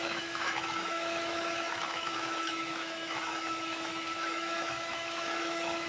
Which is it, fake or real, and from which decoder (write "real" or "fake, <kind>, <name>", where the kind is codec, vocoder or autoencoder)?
fake, autoencoder, DAC-VAE